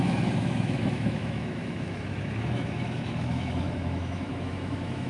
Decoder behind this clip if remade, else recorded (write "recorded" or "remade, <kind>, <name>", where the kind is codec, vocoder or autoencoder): remade, autoencoder, DAC-VAE